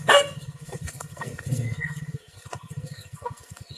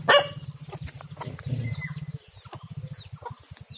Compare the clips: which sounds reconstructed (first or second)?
first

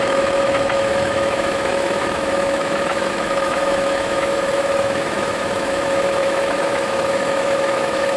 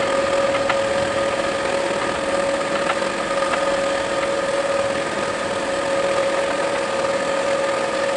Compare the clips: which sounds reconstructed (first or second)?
first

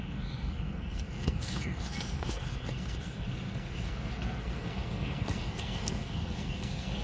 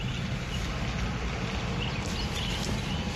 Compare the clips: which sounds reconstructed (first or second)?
first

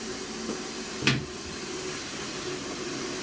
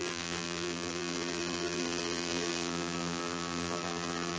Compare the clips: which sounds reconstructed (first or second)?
second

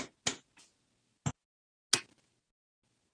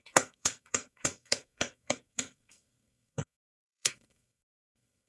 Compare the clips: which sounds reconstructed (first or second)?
second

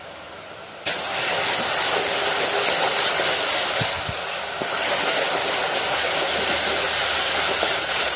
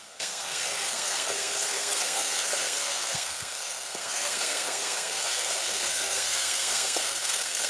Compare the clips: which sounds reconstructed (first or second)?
second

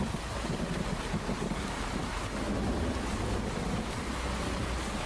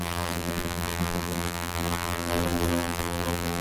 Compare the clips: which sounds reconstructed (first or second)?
second